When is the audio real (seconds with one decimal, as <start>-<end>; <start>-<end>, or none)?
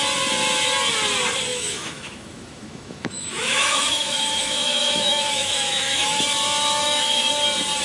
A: 0.0-1.5; 6.2-6.8; 7.3-7.8